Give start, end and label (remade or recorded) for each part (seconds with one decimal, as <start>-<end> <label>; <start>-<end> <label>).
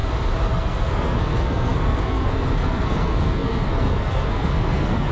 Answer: 0.0-0.5 recorded; 0.5-5.1 remade